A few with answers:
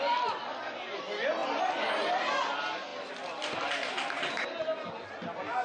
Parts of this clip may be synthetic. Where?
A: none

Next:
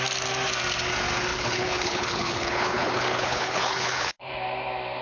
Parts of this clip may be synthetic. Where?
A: 1.3-4.3 (codec, HILCodec)

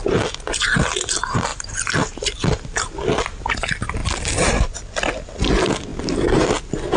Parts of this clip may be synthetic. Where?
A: none

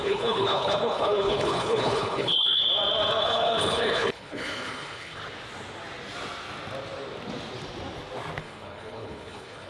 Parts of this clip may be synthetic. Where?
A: 0.0-2.6 (codec, HILCodec); 3.2-5.2; 8.4-9.7

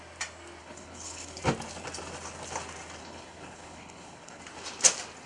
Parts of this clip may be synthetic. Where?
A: 0.6-1.4 (codec, HILCodec); 3.0-4.4